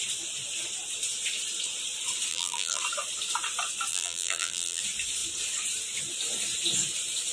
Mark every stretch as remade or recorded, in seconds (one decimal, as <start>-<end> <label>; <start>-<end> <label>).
0.0-2.3 recorded; 2.3-2.8 remade; 2.8-3.9 recorded; 3.9-4.8 remade; 4.8-7.3 recorded